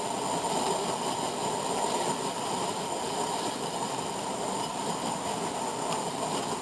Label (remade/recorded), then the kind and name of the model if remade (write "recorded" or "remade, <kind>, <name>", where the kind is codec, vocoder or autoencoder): recorded